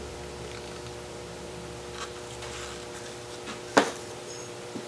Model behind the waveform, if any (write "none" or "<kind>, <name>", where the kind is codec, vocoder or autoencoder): vocoder, BigVGAN v2